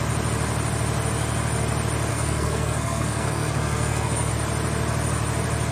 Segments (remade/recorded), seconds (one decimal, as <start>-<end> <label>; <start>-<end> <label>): 0.0-2.1 recorded; 2.1-4.3 remade; 4.3-5.7 recorded